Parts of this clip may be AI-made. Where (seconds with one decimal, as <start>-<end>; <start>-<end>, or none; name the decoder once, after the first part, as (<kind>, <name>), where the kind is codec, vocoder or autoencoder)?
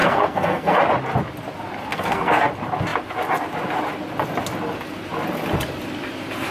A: 0.0-0.8 (codec, SNAC); 1.9-2.5